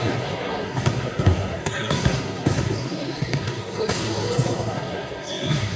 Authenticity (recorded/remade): remade